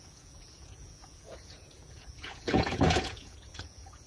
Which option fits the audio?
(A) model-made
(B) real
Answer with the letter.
A